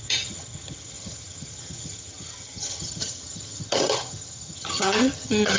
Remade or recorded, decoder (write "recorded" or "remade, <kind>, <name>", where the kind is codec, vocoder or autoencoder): remade, vocoder, HiFi-GAN